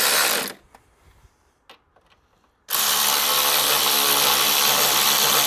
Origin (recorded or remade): recorded